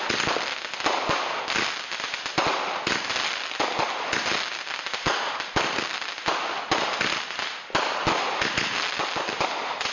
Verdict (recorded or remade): recorded